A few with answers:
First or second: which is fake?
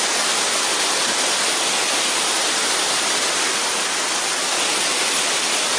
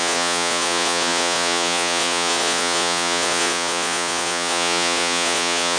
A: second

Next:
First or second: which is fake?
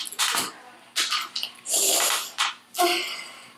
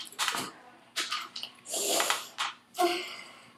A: second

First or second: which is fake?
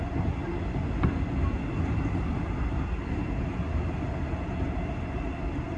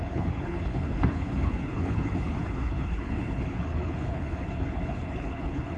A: second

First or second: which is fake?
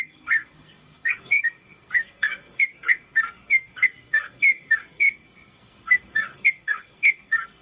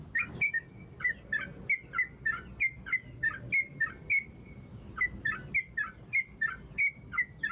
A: first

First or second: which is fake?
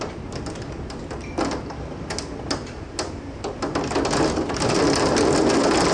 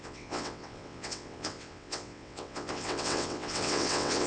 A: second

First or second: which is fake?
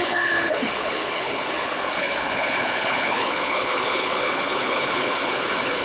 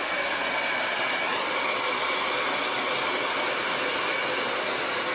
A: first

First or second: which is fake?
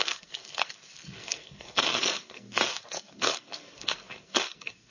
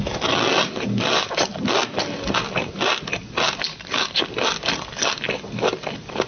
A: first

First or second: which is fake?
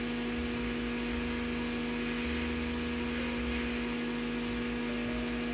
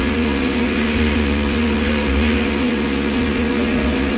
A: second